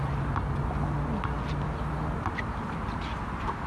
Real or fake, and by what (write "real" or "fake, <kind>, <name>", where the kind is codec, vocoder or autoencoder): real